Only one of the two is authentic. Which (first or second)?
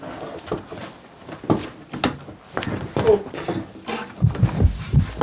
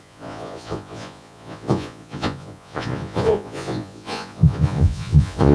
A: first